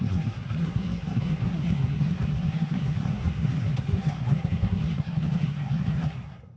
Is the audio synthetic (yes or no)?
yes